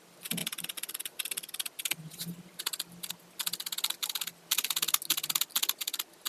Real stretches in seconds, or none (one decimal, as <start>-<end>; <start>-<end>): 0.0-6.3